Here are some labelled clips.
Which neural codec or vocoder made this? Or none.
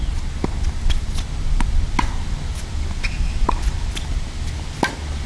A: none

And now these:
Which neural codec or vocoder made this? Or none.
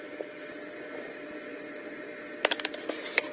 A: none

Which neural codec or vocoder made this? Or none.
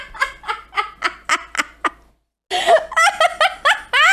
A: none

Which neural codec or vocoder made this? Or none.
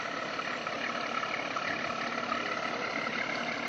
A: none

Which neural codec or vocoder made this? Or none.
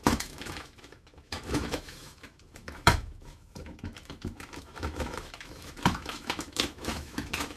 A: autoencoder, DAC-VAE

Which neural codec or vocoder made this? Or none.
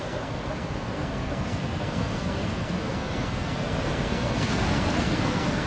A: codec, SNAC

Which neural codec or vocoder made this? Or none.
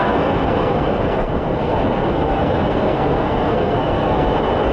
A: codec, SNAC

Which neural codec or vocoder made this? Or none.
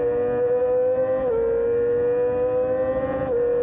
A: none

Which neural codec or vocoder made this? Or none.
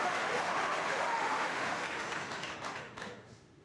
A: autoencoder, DAC-VAE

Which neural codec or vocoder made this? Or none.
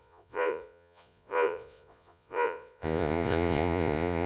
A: vocoder, Vocos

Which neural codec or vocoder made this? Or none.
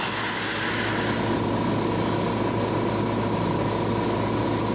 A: none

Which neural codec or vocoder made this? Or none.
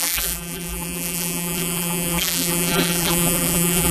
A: vocoder, BigVGAN v2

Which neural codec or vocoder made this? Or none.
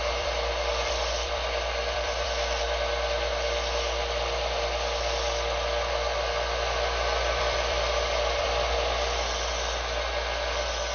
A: vocoder, BigVGAN v2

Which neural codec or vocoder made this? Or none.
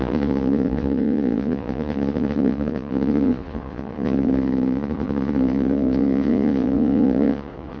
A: vocoder, Vocos